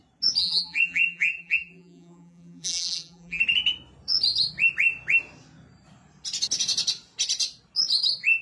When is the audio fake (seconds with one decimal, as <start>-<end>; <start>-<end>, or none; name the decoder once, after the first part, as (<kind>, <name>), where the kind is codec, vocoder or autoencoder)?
0.4-3.4 (vocoder, BigVGAN v2)